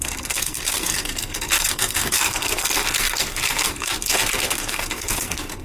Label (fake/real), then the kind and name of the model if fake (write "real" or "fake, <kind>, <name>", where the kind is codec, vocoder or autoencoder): fake, codec, SNAC